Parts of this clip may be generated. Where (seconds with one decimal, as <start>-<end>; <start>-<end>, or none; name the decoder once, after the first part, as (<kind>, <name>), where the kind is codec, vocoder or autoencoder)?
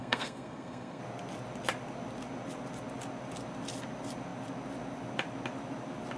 0.0-1.0 (codec, SNAC)